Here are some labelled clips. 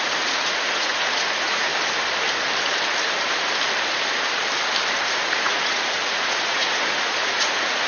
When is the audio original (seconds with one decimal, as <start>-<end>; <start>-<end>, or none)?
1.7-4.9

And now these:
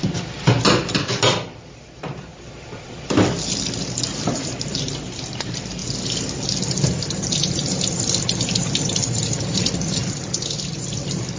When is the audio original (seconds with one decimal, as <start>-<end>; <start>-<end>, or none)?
2.3-4.4; 5.8-8.2; 10.0-10.8

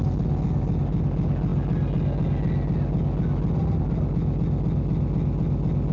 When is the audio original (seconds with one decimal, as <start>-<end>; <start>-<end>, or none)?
0.0-5.9

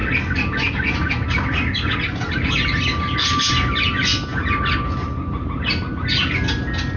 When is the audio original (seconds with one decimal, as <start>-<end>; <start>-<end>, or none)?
0.0-7.0